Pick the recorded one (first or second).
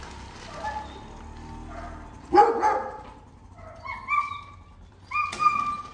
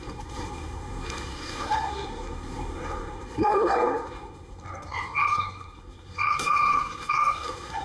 first